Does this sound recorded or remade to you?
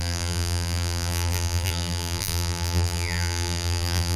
remade